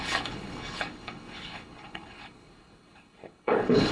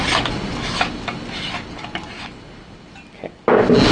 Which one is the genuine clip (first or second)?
second